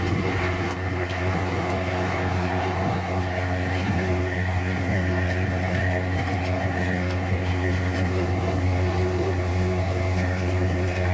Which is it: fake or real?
fake